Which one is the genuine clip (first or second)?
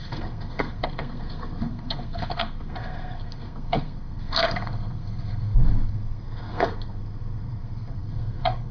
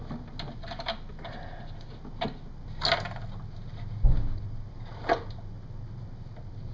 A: second